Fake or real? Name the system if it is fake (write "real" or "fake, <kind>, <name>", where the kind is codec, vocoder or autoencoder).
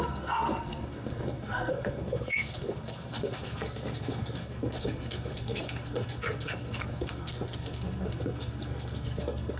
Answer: fake, codec, SNAC